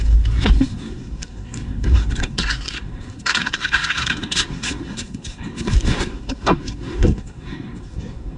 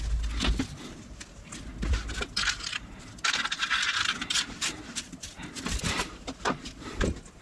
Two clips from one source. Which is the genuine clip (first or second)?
second